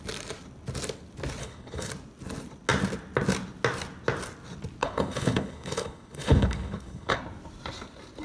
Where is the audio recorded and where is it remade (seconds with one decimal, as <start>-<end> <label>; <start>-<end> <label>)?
0.0-1.4 recorded; 1.4-1.9 remade; 1.9-4.8 recorded; 4.8-7.2 remade; 7.2-8.2 recorded